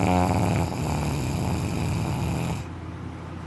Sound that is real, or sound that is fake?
real